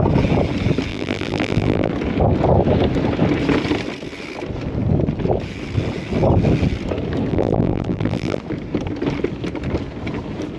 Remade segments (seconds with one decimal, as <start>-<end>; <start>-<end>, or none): 0.9-1.9; 7.3-8.4